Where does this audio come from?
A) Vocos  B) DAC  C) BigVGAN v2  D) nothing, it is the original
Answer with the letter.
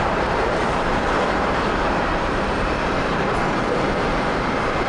C